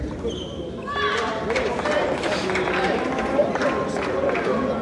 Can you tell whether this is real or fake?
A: real